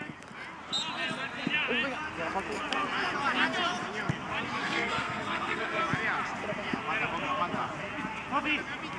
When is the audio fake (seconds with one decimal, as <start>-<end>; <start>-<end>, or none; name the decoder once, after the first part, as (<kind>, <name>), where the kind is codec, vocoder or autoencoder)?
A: 4.6-5.8 (codec, SNAC)